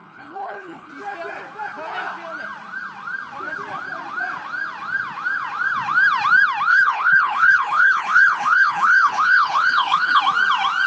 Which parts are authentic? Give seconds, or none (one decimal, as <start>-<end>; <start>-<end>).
0.9-6.7; 10.2-10.9

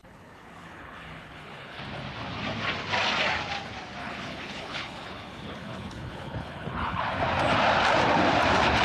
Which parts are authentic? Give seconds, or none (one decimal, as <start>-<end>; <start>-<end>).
1.8-4.0; 7.0-8.8